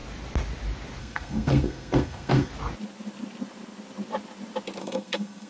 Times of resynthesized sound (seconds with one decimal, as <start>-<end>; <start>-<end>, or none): 1.0-2.5; 4.8-5.5